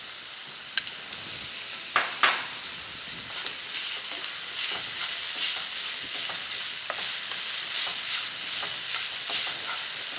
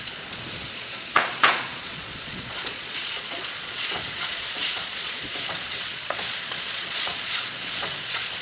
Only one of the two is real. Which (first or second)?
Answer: first